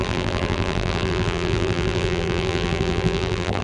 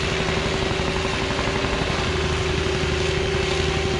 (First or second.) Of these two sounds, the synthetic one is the first